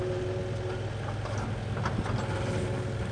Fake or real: real